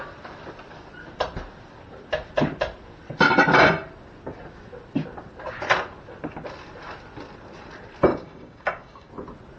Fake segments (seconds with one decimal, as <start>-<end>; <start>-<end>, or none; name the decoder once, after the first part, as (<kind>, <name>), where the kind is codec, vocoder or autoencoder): 8.1-9.1 (codec, DAC)